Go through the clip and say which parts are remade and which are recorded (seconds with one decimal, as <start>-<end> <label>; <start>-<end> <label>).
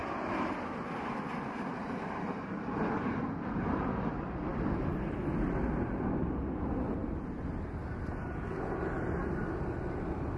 0.0-10.4 recorded